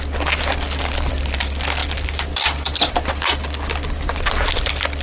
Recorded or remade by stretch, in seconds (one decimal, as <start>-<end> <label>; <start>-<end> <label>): 0.0-5.0 recorded